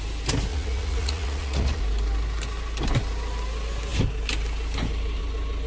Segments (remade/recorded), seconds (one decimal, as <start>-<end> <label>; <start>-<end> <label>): 0.0-0.5 recorded; 0.5-1.8 remade; 1.8-5.7 recorded